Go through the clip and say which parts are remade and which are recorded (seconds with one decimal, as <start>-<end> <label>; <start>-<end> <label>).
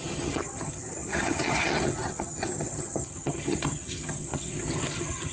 0.0-5.3 remade